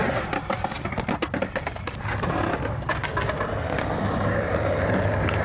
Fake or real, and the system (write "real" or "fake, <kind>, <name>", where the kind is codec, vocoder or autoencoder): real